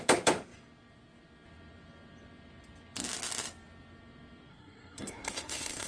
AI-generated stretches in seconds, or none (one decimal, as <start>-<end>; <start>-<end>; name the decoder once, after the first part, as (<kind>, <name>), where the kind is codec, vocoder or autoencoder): 4.5-5.9 (codec, SNAC)

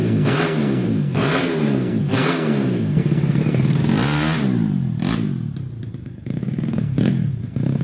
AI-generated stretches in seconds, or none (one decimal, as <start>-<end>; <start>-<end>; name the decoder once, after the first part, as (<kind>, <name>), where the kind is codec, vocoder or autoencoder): 0.0-3.8 (codec, SNAC); 5.9-7.8

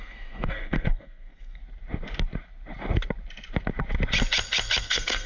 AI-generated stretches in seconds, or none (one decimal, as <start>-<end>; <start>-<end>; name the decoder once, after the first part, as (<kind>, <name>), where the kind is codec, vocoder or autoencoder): 0.0-1.6 (codec, SNAC); 4.8-5.3

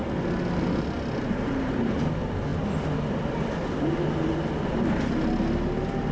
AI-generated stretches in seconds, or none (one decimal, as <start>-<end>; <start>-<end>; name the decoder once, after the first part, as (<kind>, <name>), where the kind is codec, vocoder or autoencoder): none

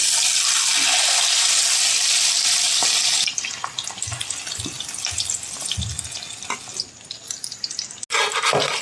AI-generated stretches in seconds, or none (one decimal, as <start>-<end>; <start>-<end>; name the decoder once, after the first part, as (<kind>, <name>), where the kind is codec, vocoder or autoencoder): none

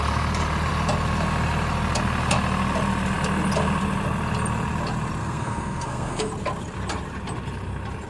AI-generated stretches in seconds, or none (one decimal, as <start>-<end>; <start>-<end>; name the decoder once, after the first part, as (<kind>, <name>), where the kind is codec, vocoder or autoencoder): 5.2-6.3 (codec, SNAC)

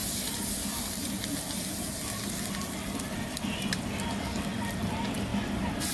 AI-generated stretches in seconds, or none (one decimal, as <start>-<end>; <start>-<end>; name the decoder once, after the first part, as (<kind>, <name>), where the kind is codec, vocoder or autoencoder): none